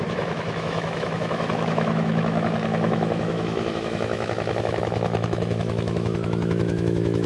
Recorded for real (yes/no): no